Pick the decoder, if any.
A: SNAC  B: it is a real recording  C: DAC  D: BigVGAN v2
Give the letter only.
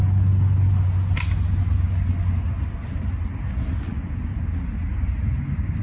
B